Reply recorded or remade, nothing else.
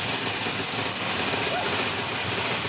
recorded